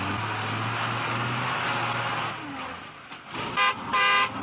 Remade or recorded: recorded